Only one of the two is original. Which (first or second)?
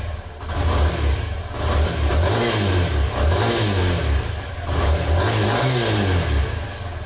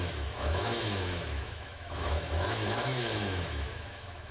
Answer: first